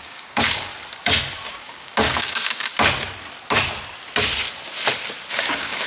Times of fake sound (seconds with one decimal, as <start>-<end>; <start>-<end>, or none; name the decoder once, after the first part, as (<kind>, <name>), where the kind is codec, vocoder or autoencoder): 0.0-0.7 (codec, DAC); 1.4-2.7; 5.3-5.9